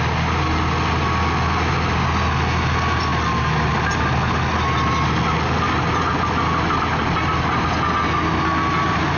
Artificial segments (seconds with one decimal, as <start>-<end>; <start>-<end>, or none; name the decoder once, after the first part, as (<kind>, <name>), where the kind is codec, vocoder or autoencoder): none